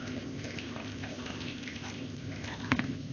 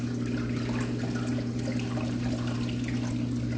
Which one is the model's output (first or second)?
first